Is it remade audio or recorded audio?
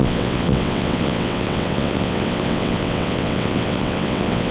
remade